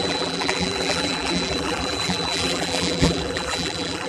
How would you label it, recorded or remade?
remade